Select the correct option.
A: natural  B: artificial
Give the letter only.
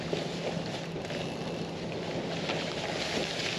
A